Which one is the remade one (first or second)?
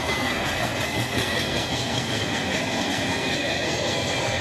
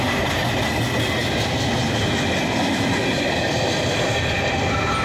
first